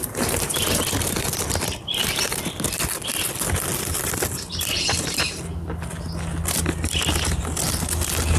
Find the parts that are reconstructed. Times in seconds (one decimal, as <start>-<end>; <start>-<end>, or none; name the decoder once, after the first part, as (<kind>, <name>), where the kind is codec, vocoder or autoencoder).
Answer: 0.0-0.8 (vocoder, BigVGAN v2)